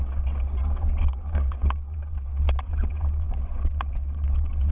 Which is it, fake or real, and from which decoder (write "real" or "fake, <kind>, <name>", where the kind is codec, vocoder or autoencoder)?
fake, vocoder, WaveNeXt